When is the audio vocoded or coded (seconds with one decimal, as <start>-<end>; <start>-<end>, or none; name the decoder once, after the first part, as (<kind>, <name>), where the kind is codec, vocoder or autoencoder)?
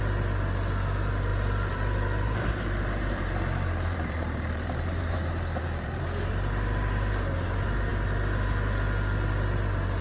1.3-6.0 (vocoder, BigVGAN v2)